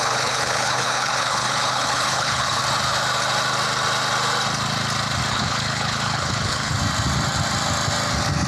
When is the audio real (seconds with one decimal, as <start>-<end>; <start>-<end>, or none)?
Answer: 2.6-5.3; 6.7-8.5